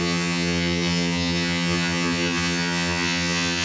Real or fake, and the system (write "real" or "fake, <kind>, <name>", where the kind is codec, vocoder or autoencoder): fake, vocoder, HiFi-GAN